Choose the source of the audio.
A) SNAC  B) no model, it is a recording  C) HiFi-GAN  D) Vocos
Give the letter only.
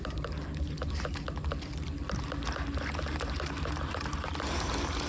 B